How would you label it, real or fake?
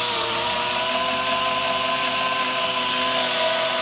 real